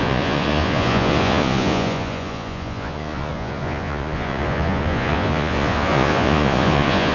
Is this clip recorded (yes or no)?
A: no